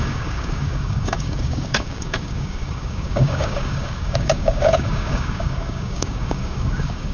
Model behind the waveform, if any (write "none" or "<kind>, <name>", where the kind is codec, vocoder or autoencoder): codec, DAC